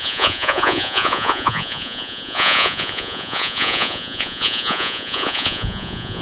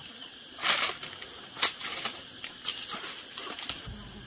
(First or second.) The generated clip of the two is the first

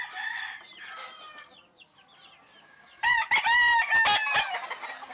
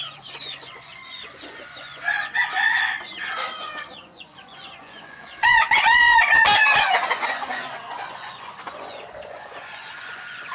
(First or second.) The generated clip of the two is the second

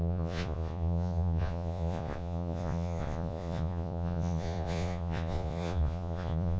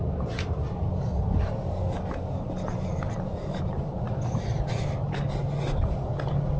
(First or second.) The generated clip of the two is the first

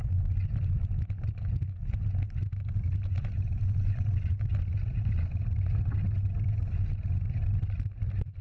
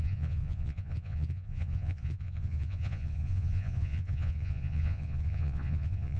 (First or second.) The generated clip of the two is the second